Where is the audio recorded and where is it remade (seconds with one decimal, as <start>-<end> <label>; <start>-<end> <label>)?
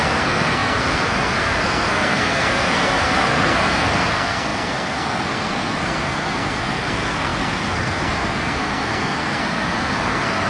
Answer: 0.0-10.5 remade